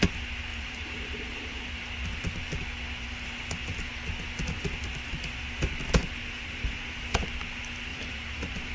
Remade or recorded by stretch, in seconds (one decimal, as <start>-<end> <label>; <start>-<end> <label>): 0.0-0.5 recorded; 0.5-1.6 remade; 1.6-7.9 recorded; 7.9-8.7 remade